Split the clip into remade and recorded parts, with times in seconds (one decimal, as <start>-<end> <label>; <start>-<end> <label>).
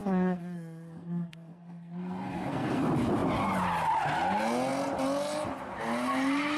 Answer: 0.0-2.8 remade; 2.8-6.6 recorded